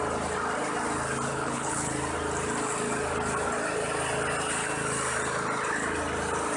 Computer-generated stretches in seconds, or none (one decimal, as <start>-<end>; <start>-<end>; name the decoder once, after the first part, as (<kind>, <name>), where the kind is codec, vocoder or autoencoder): 1.3-1.9 (codec, HILCodec)